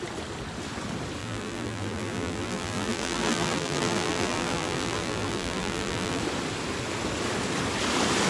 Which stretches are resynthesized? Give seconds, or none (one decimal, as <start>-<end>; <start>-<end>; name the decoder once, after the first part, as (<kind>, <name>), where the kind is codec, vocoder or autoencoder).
1.2-6.2 (vocoder, BigVGAN v2)